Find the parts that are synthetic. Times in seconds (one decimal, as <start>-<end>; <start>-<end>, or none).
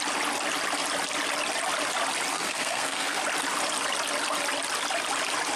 2.3-3.2